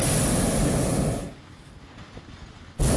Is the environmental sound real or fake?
real